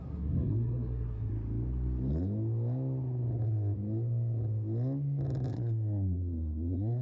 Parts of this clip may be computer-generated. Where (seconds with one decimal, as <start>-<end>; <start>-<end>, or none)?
0.0-1.3; 5.5-7.0